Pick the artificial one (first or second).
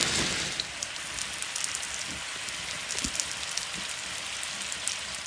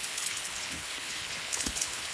second